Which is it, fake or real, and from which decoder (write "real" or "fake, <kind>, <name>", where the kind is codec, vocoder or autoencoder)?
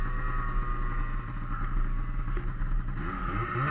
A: real